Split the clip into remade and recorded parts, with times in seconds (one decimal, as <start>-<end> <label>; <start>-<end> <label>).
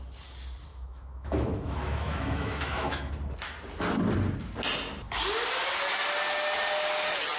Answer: 0.0-0.7 recorded; 0.7-3.1 remade; 3.1-7.4 recorded